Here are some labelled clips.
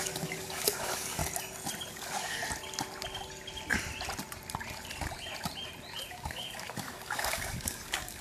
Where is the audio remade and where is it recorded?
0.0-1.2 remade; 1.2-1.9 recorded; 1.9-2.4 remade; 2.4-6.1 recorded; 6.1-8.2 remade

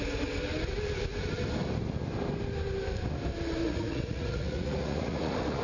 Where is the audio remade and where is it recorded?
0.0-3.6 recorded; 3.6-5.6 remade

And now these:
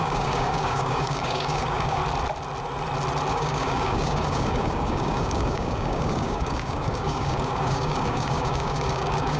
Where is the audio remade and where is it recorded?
0.0-2.0 remade; 2.0-3.3 recorded; 3.3-9.4 remade

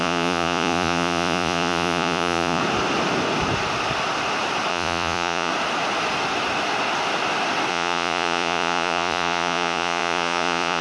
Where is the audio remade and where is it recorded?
0.0-2.6 remade; 2.6-4.7 recorded; 4.7-5.5 remade; 5.5-7.7 recorded; 7.7-10.8 remade

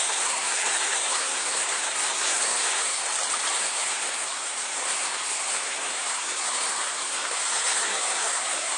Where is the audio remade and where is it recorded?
0.0-3.0 remade; 3.0-3.5 recorded; 3.5-8.8 remade

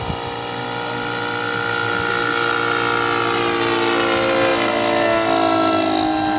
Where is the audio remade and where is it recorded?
0.0-6.4 recorded

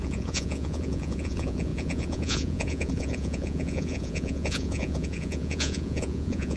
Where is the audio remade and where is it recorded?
0.0-6.6 remade